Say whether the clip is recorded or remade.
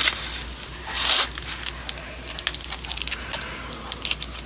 recorded